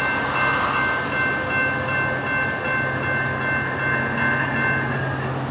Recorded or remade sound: recorded